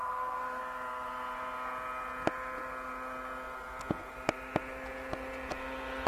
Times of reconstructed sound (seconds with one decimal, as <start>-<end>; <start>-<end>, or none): 0.0-0.6